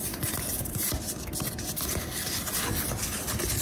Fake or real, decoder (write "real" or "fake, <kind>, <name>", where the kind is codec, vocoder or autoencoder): fake, vocoder, BigVGAN v2